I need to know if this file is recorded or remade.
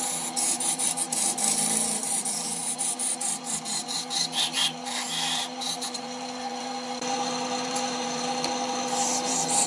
remade